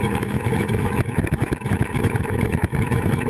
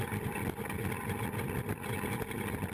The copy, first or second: first